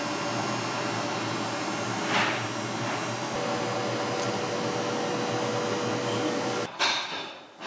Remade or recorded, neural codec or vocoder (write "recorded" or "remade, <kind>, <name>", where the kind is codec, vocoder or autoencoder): recorded